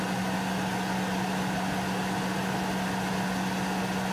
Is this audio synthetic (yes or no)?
no